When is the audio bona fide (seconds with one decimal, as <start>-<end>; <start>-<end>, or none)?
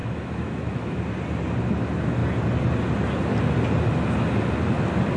1.0-5.2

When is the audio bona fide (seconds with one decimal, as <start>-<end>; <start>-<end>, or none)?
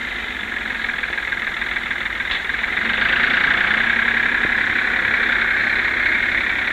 0.0-6.7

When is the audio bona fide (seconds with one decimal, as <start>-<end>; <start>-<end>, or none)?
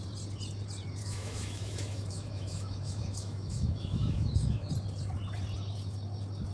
0.0-1.0; 4.7-6.5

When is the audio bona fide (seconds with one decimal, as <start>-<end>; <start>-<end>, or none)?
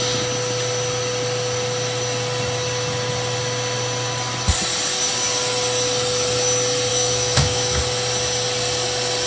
0.0-6.9; 7.8-9.3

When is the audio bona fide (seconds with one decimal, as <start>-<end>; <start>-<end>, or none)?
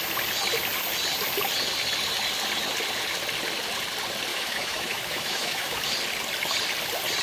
0.0-4.3; 5.8-7.2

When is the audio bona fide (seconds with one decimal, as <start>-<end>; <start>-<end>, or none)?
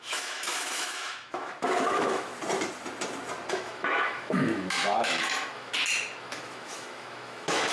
2.3-3.5; 5.7-6.2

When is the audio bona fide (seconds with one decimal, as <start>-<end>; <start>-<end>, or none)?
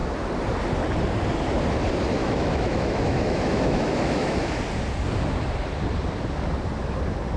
0.0-2.2; 4.6-7.4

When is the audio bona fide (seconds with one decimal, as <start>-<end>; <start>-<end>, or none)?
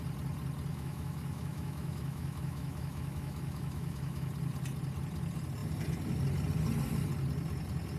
0.0-0.7; 4.3-8.0